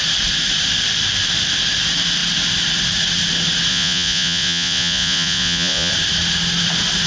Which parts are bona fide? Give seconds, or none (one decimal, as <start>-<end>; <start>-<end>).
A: 0.0-3.7; 5.9-7.1